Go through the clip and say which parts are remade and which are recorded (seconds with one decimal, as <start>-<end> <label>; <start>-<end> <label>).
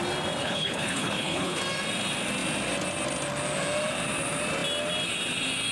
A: 0.0-0.4 recorded; 0.4-1.6 remade; 1.6-5.7 recorded